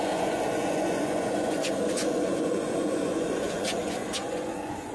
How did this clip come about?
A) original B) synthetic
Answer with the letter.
B